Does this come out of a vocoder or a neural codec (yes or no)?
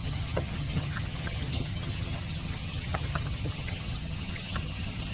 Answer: yes